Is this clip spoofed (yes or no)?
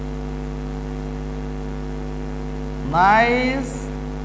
no